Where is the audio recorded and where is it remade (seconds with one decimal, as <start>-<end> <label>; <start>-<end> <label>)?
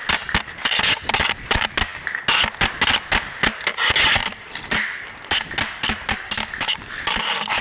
0.0-4.2 recorded; 4.2-7.6 remade